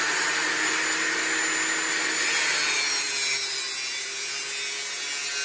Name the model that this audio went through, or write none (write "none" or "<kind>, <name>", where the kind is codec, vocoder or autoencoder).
none